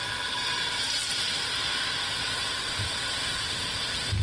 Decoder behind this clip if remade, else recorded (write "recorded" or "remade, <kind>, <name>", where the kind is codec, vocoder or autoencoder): recorded